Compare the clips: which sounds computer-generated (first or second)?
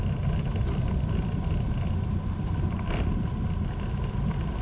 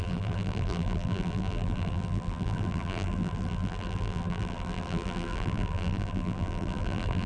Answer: second